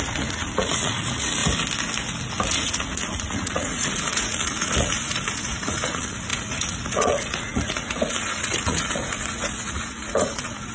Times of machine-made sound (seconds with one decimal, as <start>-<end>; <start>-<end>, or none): 0.0-1.4; 2.5-10.7